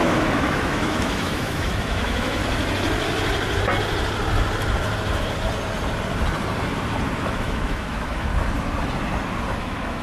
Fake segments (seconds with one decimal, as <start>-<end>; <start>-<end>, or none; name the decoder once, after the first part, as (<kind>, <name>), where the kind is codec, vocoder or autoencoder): 0.0-2.4 (autoencoder, DAC-VAE); 7.2-8.3; 9.6-10.0